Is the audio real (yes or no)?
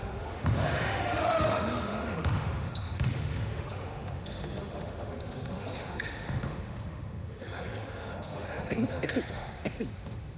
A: no